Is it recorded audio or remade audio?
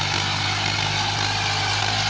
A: recorded